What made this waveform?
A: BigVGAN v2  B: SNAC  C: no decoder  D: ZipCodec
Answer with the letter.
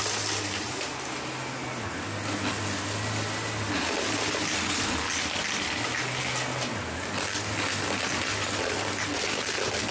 C